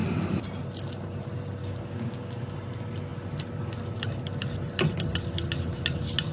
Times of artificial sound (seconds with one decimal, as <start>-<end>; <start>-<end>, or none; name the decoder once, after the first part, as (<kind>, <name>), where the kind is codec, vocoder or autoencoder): 1.6-2.4 (codec, DAC)